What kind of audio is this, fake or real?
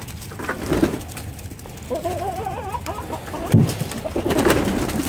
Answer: real